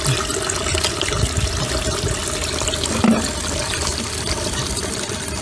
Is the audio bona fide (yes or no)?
yes